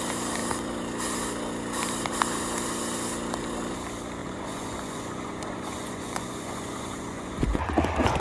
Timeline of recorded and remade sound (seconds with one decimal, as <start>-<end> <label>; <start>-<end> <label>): 0.0-4.2 recorded; 4.2-8.2 remade